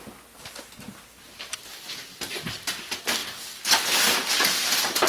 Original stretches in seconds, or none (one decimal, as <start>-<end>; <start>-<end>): 0.0-5.1